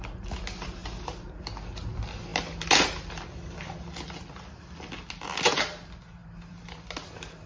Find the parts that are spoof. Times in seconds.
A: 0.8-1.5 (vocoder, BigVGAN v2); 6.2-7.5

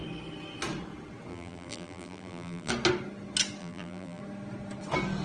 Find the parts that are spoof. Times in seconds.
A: 1.3-2.7 (vocoder, BigVGAN v2); 3.6-4.2

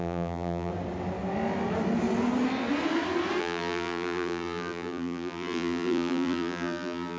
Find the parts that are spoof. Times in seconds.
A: 0.0-0.7 (vocoder, BigVGAN v2); 3.4-7.2

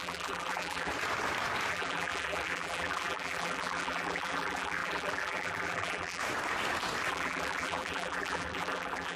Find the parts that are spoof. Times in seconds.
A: 0.0-0.9 (vocoder, BigVGAN v2); 1.7-6.2; 7.1-9.2